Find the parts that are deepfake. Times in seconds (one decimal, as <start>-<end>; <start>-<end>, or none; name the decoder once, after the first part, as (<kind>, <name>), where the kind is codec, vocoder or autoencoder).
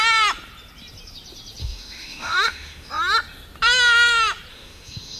1.6-2.9 (autoencoder, DAC-VAE); 4.5-5.2